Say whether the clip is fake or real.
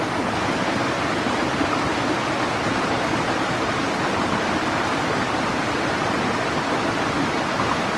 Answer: real